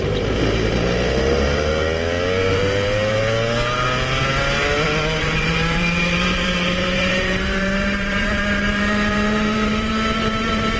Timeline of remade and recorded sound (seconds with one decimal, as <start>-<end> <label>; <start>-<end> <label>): 0.0-1.7 remade; 1.7-2.5 recorded; 2.5-3.2 remade; 3.2-5.2 recorded; 5.2-10.8 remade